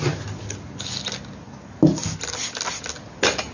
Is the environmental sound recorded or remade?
recorded